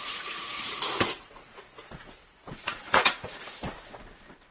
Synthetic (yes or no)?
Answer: yes